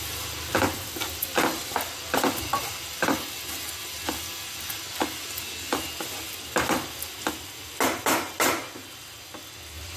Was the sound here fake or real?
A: real